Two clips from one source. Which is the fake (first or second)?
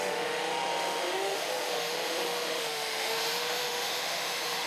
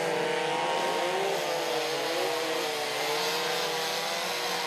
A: first